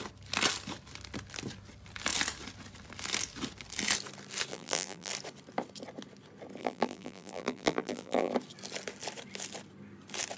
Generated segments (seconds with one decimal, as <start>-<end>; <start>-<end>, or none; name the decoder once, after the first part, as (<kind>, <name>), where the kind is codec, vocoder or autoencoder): 4.5-5.1 (vocoder, BigVGAN v2); 6.6-8.3